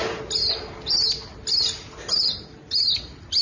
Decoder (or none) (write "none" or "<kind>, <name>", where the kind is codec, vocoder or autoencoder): none